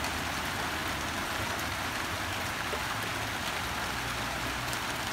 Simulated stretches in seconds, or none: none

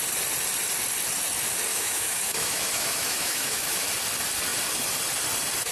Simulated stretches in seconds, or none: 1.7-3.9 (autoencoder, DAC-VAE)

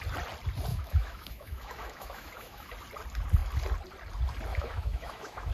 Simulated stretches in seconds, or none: 0.7-2.7 (autoencoder, DAC-VAE); 4.5-5.5